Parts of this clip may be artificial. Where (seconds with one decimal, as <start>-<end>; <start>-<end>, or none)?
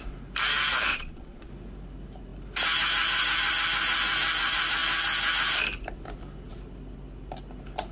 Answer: 0.9-1.5